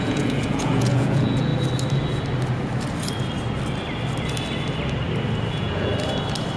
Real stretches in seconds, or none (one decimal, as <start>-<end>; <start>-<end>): 1.5-5.5; 5.9-6.6